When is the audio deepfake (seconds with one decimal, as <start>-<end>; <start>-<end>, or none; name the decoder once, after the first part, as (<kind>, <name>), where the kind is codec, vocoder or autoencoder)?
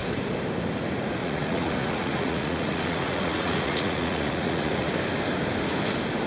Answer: 1.2-4.9 (vocoder, Vocos)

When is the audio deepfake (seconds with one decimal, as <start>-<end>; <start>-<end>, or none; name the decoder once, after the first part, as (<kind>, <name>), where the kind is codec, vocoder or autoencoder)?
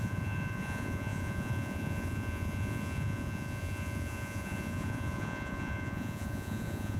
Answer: 0.0-7.0 (vocoder, Vocos)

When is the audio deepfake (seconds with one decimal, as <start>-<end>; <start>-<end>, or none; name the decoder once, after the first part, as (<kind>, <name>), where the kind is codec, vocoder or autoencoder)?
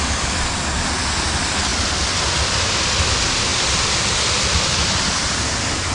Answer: none